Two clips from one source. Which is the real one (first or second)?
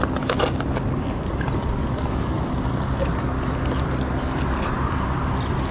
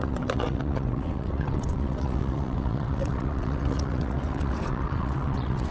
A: first